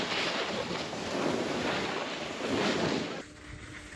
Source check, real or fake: real